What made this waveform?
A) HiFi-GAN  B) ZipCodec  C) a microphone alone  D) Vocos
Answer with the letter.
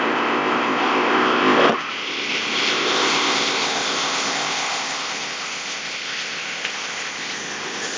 B